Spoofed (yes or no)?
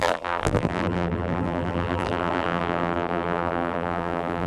yes